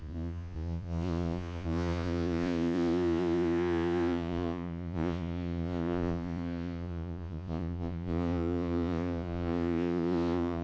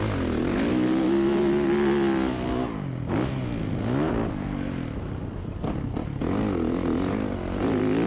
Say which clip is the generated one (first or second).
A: first